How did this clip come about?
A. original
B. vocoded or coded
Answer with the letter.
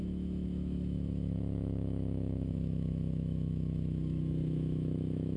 B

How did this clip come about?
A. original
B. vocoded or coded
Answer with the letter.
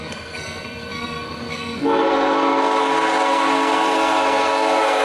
B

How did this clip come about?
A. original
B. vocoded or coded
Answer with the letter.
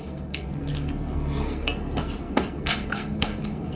B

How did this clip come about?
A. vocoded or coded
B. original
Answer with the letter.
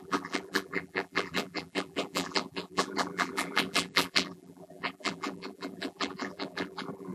A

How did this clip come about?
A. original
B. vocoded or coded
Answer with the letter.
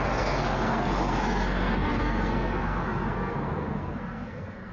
B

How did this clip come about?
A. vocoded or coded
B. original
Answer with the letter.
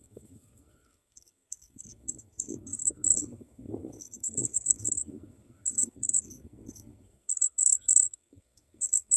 A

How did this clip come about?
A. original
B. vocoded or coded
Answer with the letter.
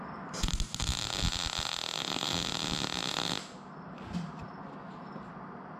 A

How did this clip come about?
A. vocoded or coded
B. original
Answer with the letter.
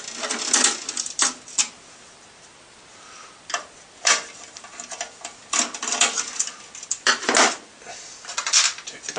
B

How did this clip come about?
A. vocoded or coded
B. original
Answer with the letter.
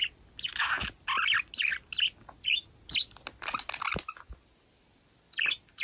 B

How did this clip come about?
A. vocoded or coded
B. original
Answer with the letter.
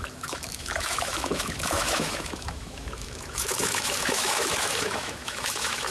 A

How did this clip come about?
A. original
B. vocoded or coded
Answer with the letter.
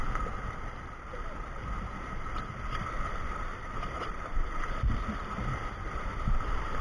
B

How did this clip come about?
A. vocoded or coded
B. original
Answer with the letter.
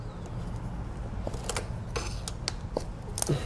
B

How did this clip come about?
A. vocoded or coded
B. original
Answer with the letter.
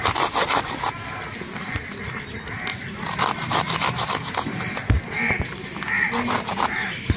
B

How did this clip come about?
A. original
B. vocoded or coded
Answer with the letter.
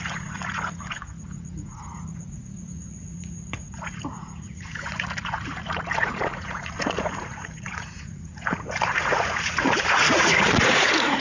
B